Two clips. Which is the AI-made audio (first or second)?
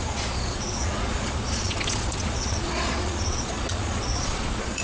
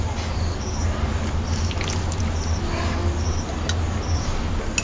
first